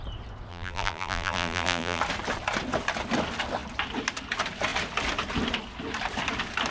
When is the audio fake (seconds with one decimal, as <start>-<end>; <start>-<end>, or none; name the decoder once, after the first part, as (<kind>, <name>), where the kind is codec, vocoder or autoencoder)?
0.5-2.0 (vocoder, BigVGAN v2)